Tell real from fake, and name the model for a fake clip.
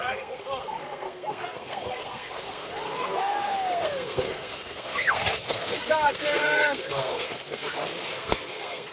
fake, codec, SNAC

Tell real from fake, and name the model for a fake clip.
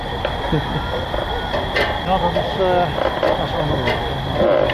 real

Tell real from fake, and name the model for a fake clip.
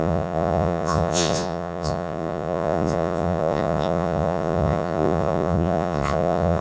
fake, vocoder, Vocos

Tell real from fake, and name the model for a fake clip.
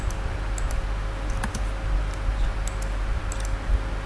real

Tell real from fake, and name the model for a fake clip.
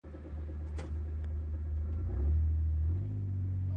real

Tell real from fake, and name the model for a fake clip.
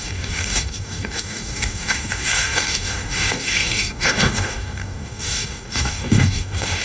fake, codec, DAC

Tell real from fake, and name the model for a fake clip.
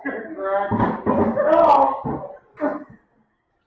real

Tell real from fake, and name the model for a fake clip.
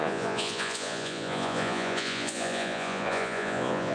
fake, vocoder, Vocos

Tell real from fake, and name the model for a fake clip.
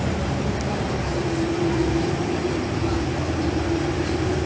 real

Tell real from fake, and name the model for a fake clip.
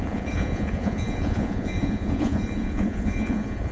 fake, vocoder, Vocos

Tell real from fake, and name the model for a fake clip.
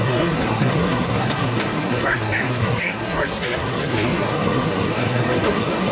fake, codec, SNAC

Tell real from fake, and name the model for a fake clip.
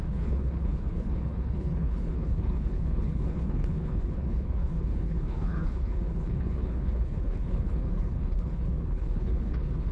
fake, codec, HILCodec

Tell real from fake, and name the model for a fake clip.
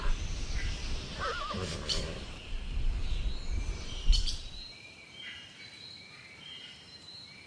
fake, vocoder, BigVGAN v2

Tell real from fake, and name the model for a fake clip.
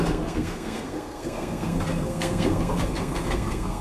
fake, codec, SNAC